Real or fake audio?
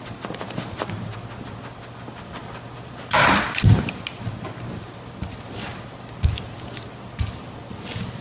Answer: real